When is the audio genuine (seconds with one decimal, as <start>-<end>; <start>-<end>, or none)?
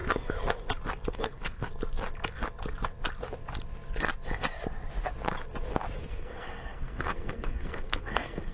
0.0-1.1; 1.7-6.1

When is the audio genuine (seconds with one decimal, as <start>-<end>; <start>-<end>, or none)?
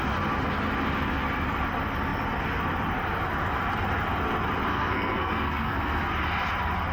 0.0-4.7; 6.1-6.9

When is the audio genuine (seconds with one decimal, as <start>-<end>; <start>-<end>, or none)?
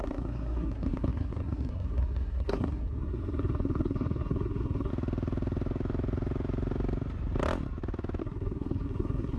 4.9-8.2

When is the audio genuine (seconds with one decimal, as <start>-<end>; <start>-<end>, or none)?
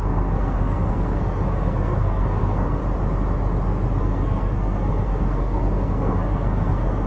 2.8-4.0